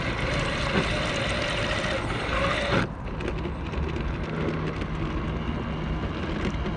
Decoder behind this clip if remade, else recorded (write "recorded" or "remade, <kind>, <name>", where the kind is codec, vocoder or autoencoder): recorded